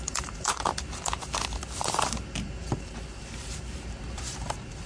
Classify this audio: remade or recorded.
remade